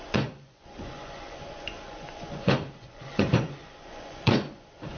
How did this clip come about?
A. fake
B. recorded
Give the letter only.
A